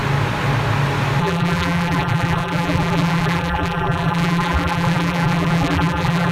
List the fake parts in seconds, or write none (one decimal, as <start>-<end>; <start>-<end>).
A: 1.2-6.3